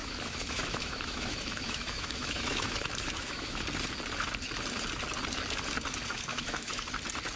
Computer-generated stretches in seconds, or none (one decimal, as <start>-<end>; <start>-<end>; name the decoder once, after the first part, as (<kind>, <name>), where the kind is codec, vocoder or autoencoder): 0.0-3.6 (autoencoder, DAC-VAE); 6.3-6.9